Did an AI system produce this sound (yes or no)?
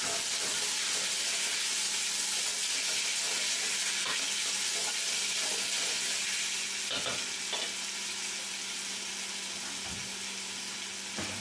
no